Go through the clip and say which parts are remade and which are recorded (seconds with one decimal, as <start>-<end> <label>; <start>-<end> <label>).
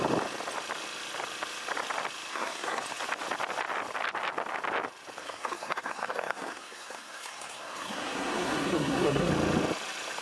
0.0-2.3 recorded; 2.3-2.8 remade; 2.8-5.2 recorded; 5.2-9.3 remade; 9.3-10.2 recorded